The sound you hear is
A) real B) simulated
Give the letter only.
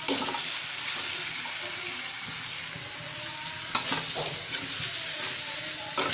A